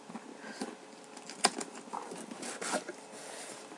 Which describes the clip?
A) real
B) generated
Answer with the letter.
A